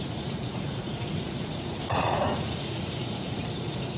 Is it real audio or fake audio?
fake